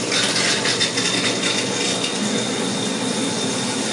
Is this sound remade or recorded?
remade